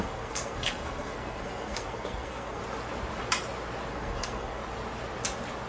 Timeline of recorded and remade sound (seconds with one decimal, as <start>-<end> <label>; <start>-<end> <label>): 0.0-2.6 remade; 2.6-3.9 recorded; 3.9-4.6 remade; 4.6-5.7 recorded